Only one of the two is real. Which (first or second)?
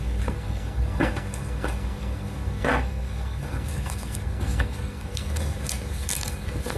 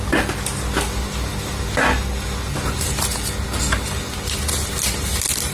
second